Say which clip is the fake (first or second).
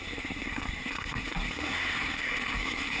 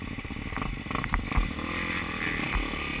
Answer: first